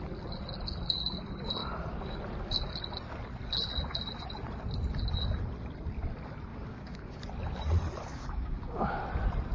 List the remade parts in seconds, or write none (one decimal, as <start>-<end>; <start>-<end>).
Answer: 6.5-7.2; 8.1-9.0